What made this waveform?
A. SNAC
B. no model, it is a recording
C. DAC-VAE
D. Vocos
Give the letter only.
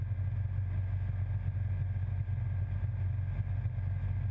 B